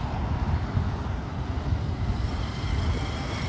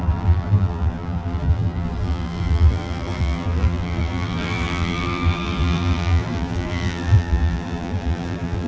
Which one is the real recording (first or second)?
first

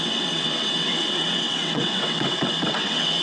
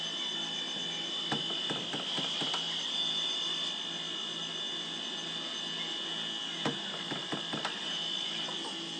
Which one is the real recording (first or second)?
second